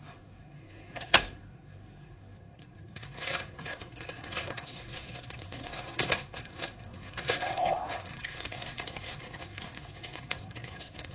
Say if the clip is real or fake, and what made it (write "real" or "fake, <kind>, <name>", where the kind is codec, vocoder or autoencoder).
fake, codec, SNAC